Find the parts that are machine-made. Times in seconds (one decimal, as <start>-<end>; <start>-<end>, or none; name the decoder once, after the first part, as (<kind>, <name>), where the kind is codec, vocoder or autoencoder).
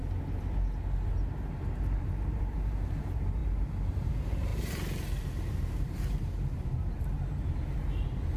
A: 1.1-8.4 (vocoder, BigVGAN v2)